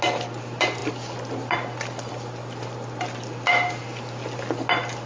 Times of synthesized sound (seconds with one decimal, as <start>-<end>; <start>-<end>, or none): none